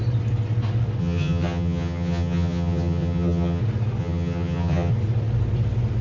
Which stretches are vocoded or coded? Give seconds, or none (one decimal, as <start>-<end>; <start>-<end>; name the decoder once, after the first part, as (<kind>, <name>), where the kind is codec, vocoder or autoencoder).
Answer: 1.0-3.6 (vocoder, HiFi-GAN); 4.0-4.9